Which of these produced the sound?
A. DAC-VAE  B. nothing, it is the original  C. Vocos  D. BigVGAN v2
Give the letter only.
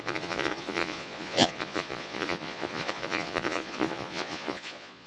C